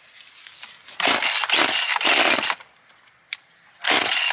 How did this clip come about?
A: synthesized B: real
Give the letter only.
B